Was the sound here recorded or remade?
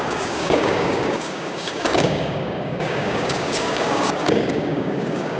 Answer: remade